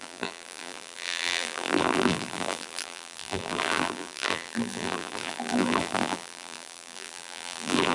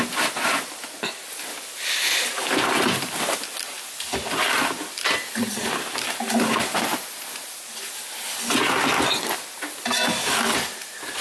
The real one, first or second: second